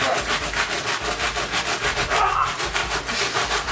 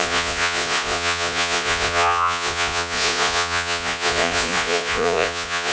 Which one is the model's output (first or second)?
second